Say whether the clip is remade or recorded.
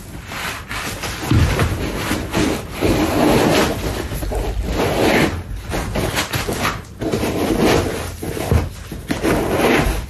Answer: recorded